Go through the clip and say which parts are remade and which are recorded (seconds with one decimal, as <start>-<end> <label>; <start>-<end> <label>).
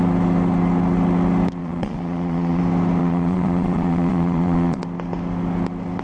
0.0-1.6 recorded; 1.6-2.6 remade; 2.6-3.0 recorded; 3.0-4.8 remade; 4.8-6.0 recorded